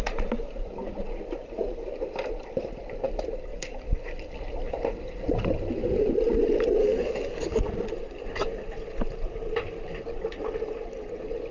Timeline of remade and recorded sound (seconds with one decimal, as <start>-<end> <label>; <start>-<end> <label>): 0.0-6.8 recorded; 6.8-7.6 remade; 7.6-11.5 recorded